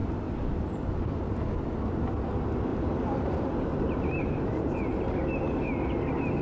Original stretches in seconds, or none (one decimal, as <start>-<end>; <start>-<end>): 0.0-2.7; 4.9-6.4